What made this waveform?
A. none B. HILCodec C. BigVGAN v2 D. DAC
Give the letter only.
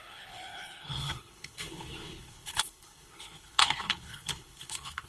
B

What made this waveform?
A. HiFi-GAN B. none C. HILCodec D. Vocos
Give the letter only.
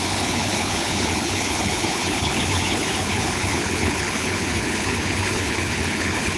C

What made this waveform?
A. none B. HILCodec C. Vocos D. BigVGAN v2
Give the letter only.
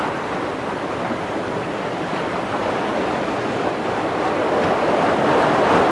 A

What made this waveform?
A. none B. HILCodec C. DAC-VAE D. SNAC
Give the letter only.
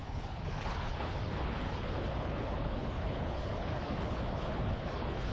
B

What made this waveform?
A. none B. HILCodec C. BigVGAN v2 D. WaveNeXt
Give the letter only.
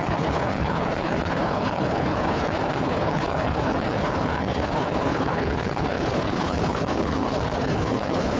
B